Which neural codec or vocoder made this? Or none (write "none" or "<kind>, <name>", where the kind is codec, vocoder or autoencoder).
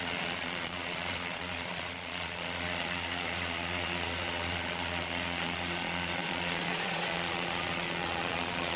vocoder, Vocos